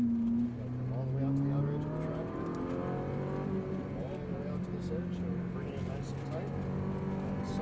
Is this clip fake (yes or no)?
no